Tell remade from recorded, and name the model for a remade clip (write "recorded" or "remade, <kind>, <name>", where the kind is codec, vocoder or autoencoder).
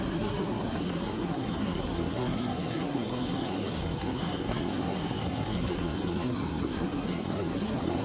remade, codec, SNAC